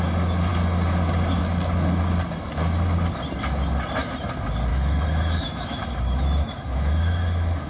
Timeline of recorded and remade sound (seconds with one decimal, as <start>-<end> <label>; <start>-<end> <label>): 0.0-4.7 recorded; 4.7-7.7 remade